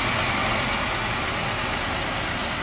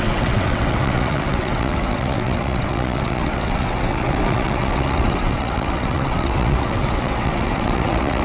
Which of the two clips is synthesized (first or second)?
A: second